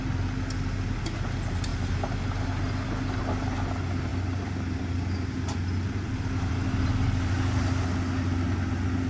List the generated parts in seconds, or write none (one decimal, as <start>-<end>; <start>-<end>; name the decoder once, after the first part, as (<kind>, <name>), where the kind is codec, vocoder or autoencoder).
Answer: none

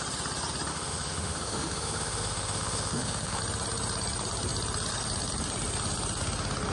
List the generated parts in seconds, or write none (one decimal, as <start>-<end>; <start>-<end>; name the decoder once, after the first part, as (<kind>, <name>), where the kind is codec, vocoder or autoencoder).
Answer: 0.7-3.4 (autoencoder, DAC-VAE)